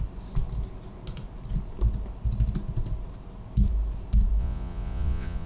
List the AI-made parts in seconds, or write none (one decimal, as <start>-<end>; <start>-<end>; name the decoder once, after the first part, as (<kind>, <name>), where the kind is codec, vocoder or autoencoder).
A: 4.4-5.5 (vocoder, Vocos)